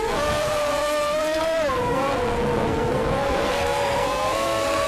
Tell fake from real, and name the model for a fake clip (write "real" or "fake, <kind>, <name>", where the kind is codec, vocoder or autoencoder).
fake, codec, SNAC